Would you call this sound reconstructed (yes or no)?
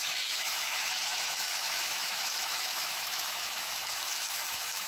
yes